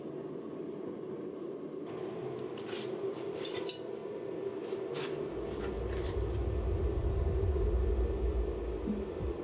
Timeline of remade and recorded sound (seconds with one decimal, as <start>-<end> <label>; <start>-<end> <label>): 0.0-9.4 recorded